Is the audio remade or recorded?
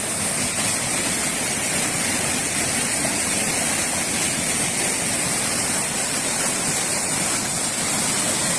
recorded